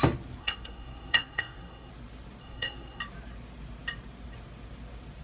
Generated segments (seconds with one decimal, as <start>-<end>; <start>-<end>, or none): 0.4-1.9; 2.4-3.0